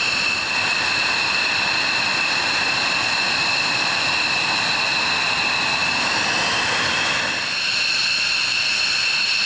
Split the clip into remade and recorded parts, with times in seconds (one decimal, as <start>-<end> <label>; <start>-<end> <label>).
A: 0.0-9.5 recorded